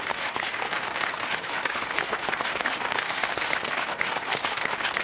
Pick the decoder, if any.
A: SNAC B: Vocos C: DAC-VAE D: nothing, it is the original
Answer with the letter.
C